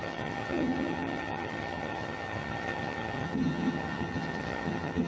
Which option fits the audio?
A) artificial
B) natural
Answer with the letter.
A